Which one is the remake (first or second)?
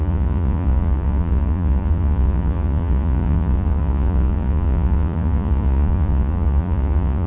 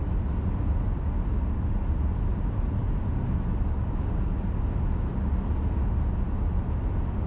first